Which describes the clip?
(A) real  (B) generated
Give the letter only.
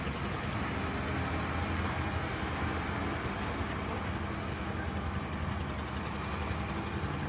A